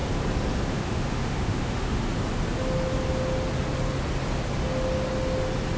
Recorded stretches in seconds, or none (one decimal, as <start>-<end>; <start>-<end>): 0.0-0.7; 2.0-5.8